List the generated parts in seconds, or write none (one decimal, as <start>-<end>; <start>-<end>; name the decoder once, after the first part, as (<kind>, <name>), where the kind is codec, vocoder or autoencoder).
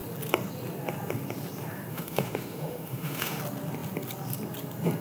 1.9-3.4 (autoencoder, DAC-VAE)